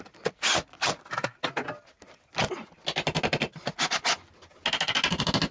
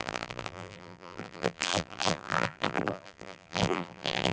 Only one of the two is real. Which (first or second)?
first